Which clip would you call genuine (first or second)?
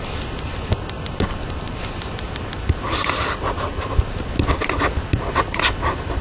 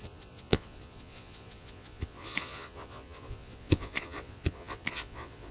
first